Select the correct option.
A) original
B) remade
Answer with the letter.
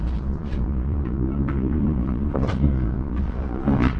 B